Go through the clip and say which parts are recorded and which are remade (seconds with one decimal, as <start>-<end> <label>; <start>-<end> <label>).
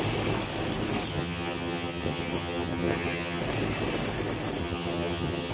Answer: 0.0-1.1 recorded; 1.1-3.4 remade; 3.4-4.6 recorded; 4.6-5.5 remade